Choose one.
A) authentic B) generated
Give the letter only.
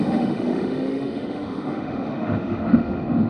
B